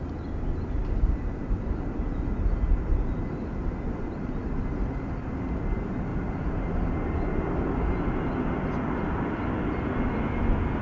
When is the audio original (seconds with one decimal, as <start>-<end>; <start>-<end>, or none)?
0.0-10.8